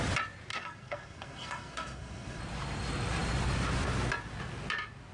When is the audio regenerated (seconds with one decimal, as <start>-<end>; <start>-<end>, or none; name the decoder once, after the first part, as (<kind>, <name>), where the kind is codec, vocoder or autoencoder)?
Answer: 0.5-2.4 (codec, SNAC)